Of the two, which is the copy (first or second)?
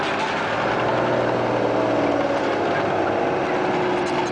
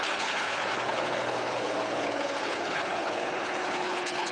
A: second